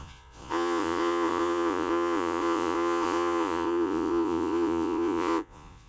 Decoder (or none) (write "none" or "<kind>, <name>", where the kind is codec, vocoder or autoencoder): vocoder, Vocos